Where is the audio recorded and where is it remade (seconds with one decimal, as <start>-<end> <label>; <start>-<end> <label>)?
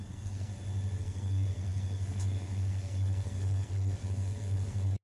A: 0.0-0.5 remade; 0.5-1.0 recorded; 1.0-5.0 remade